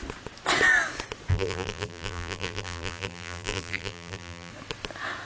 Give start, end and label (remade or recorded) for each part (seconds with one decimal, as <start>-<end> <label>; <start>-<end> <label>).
0.0-1.3 recorded; 1.3-4.5 remade; 4.5-5.3 recorded

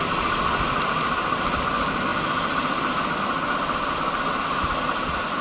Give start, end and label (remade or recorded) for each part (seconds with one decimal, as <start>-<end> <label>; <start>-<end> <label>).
0.0-5.4 recorded